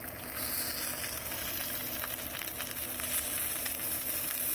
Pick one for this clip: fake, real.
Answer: real